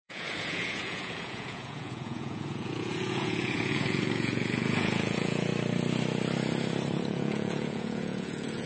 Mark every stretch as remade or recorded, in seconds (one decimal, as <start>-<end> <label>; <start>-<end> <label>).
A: 0.0-5.5 remade; 5.5-7.1 recorded; 7.1-8.7 remade

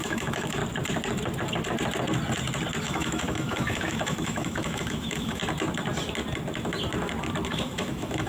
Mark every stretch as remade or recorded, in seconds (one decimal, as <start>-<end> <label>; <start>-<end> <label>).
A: 0.0-0.6 remade; 0.6-2.8 recorded; 2.8-5.4 remade; 5.4-7.5 recorded; 7.5-8.3 remade